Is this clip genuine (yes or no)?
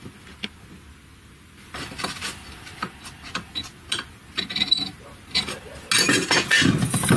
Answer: yes